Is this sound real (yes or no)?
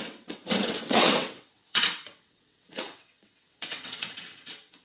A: no